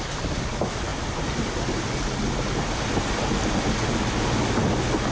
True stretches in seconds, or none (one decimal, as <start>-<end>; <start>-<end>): 0.0-5.1